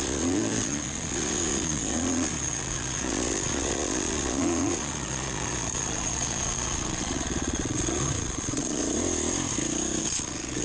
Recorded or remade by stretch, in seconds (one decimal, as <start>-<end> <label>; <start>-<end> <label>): 0.0-8.8 remade; 8.8-10.0 recorded; 10.0-10.6 remade